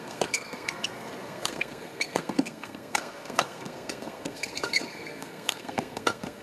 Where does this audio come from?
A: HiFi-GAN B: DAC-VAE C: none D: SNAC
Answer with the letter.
D